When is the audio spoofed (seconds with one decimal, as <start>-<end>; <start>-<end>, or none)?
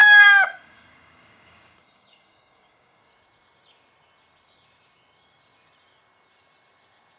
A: 0.0-3.1